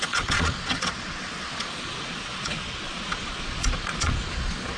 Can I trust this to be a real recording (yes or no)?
no